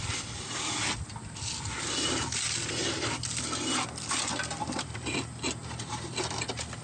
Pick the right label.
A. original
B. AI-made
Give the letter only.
A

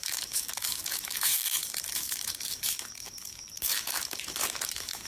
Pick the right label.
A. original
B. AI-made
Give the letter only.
B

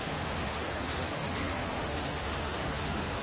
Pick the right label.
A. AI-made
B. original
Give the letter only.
A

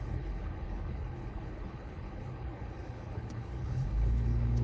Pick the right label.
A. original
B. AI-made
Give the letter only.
B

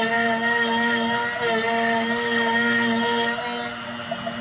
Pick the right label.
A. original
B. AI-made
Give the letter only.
A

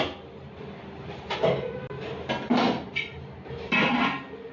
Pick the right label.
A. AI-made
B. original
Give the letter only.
B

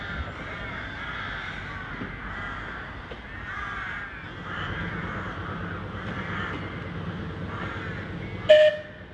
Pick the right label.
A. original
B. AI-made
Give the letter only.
A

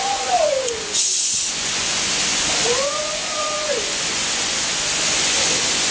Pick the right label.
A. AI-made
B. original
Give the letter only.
A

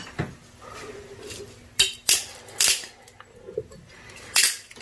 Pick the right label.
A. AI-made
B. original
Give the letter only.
B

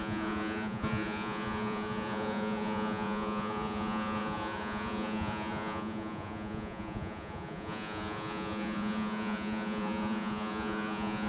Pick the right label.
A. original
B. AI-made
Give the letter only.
B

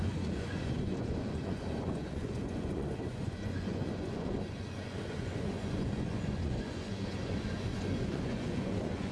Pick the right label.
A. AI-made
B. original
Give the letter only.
A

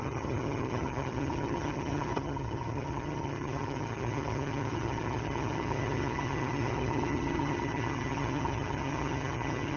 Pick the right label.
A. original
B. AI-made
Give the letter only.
B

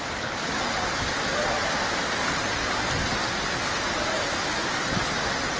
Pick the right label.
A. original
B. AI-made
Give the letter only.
A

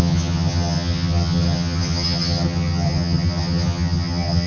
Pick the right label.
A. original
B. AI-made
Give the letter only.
B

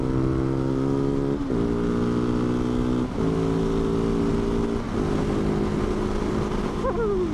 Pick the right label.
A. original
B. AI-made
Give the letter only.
A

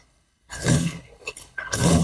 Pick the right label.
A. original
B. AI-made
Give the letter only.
B